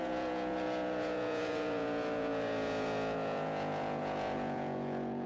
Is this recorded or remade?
remade